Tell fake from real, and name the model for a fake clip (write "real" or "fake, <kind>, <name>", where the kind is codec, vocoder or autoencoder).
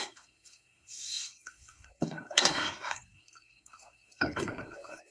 fake, codec, SNAC